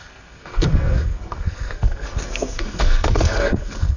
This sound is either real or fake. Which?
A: fake